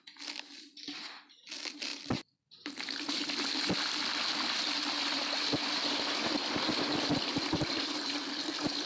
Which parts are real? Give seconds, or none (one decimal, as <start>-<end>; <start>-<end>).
0.0-8.9